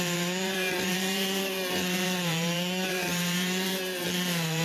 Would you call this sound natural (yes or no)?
no